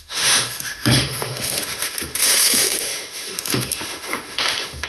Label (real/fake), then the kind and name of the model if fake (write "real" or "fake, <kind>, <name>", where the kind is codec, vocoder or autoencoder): fake, autoencoder, DAC-VAE